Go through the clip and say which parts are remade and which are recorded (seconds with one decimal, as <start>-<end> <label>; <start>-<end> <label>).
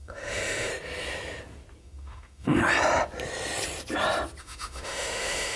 0.0-0.7 remade; 0.7-1.8 recorded; 1.8-2.6 remade; 2.6-4.4 recorded; 4.4-5.6 remade